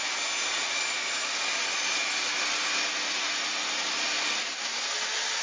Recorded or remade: recorded